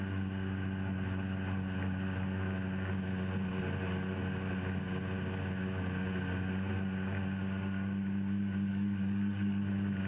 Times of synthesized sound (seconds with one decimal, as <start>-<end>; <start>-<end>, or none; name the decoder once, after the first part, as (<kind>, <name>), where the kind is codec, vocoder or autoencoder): 8.7-9.6 (codec, DAC)